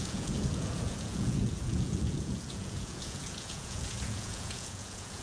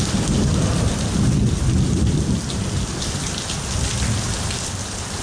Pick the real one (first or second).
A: second